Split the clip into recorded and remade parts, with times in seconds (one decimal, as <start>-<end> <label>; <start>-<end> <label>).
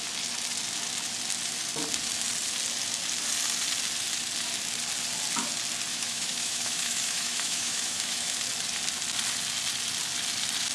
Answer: 0.0-5.9 recorded; 5.9-8.4 remade; 8.4-10.7 recorded